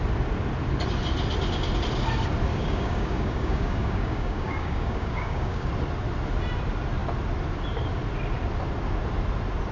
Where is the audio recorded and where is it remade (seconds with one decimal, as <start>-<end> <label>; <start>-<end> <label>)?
0.0-2.5 recorded; 2.5-5.7 remade; 5.7-9.7 recorded